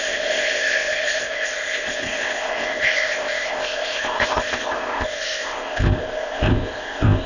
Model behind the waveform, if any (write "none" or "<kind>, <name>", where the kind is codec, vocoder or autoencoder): codec, ZipCodec